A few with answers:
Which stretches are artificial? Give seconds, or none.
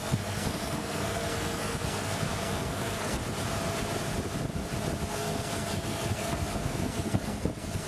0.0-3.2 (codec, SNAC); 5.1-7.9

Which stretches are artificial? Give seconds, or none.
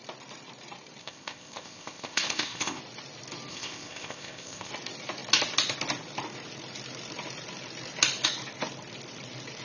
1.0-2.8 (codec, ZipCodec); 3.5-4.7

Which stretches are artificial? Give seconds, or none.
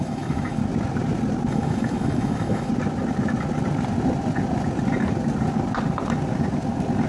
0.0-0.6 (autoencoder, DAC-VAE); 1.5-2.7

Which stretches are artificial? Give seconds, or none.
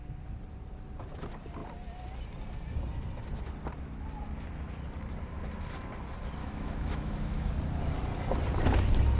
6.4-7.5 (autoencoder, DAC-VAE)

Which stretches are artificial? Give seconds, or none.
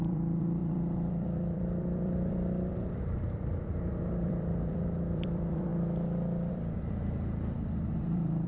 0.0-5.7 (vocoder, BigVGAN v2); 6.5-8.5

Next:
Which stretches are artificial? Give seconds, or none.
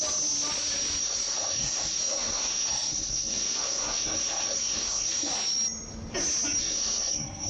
1.0-5.3 (codec, SNAC); 6.6-7.5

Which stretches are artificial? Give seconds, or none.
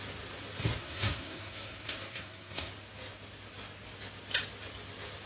0.8-2.7 (codec, SNAC)